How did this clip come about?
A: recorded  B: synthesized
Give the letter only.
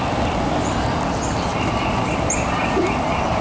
A